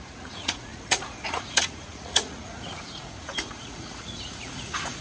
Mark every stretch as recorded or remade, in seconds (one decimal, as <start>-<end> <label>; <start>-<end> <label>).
0.0-5.0 remade